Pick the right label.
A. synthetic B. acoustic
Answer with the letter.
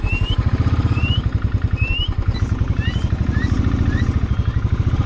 A